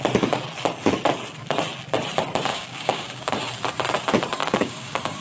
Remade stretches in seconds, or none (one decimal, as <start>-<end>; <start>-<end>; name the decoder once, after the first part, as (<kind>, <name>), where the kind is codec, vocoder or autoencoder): 2.5-3.3 (codec, DAC); 4.4-5.2